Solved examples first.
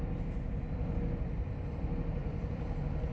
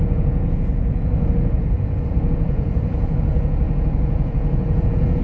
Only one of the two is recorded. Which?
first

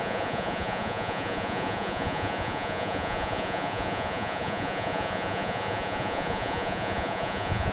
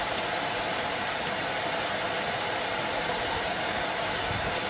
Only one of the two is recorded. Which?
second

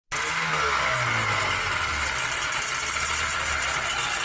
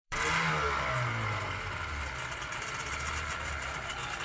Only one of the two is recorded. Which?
first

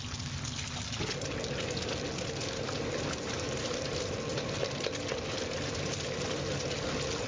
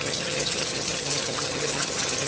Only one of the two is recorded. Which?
first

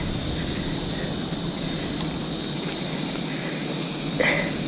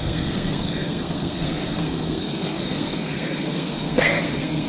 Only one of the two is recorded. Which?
first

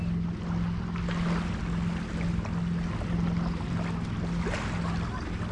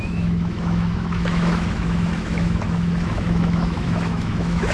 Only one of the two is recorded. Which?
first